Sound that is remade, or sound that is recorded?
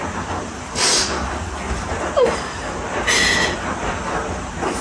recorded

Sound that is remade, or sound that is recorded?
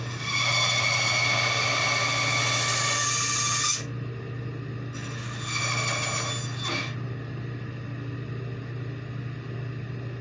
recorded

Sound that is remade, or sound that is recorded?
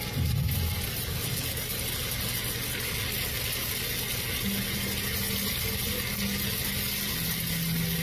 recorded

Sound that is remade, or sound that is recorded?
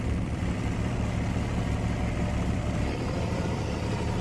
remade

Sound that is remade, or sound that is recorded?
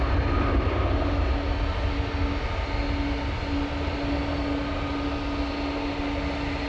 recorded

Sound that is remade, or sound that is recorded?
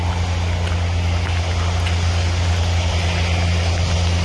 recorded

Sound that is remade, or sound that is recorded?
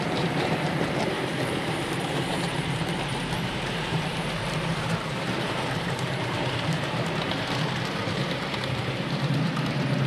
remade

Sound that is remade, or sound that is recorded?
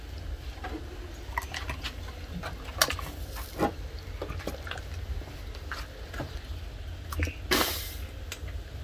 recorded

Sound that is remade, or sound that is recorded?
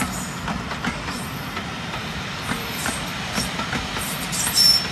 remade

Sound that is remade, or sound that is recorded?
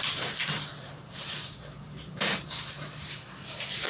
remade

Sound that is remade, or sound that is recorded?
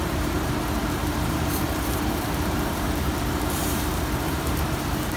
remade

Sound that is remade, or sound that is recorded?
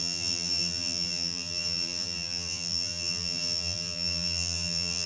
remade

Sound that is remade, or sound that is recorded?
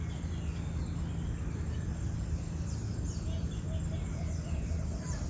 recorded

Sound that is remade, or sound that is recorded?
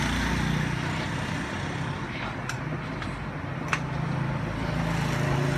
recorded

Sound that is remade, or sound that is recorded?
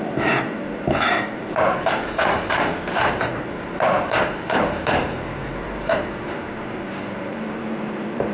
remade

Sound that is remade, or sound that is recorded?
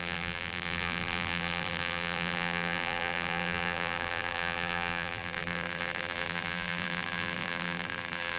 remade